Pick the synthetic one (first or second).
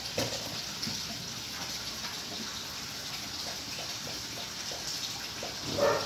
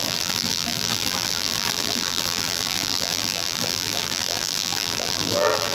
second